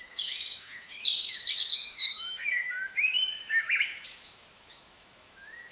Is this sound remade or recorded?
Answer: remade